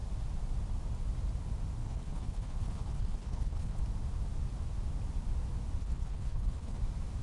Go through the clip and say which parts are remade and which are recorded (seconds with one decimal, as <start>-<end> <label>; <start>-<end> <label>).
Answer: 0.0-1.8 recorded; 1.8-3.8 remade; 3.8-5.8 recorded; 5.8-6.8 remade; 6.8-7.2 recorded